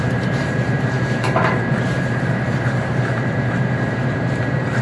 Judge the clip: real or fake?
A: fake